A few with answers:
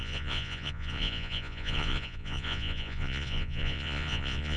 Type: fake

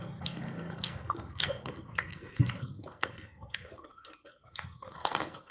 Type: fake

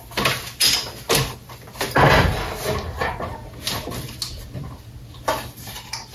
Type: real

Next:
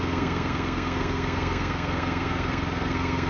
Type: fake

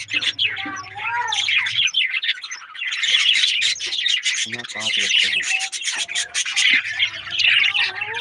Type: real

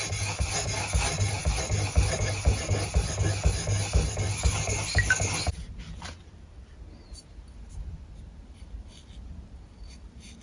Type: real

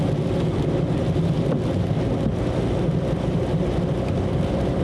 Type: real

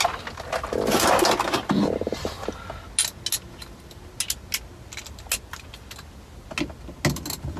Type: real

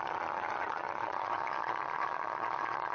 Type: fake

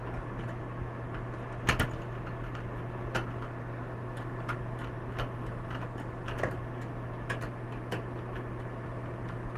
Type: real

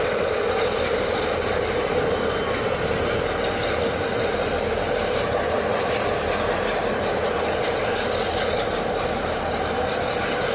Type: real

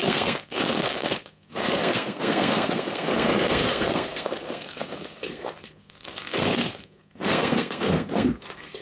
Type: fake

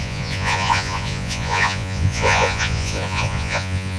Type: fake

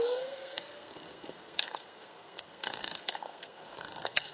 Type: fake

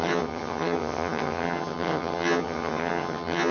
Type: fake